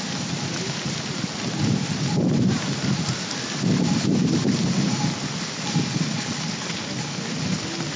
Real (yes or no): yes